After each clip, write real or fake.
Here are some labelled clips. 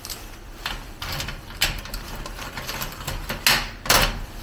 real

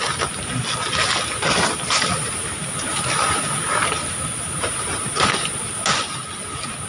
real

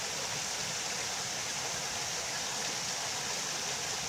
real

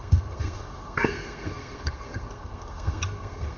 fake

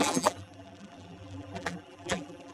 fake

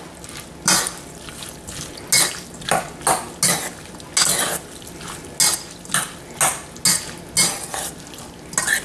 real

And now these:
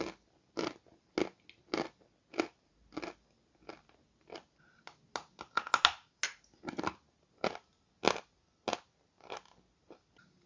real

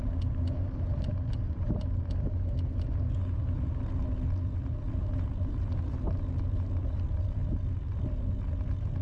real